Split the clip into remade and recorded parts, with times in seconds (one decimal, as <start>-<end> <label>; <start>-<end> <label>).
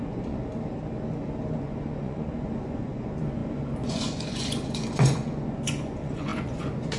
0.0-0.4 remade; 0.4-1.6 recorded; 1.6-7.0 remade